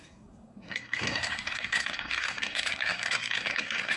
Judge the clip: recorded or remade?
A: remade